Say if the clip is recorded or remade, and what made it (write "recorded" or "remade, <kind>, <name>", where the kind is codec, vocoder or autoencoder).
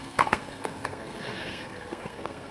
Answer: remade, codec, SNAC